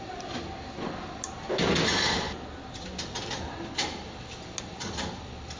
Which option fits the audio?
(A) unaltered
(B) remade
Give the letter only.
A